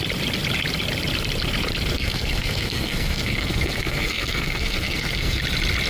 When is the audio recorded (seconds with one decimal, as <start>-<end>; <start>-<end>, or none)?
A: 0.0-1.9; 5.4-5.9